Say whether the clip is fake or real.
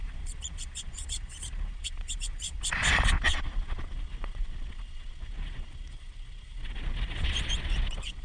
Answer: fake